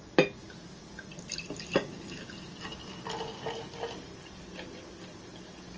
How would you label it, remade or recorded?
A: recorded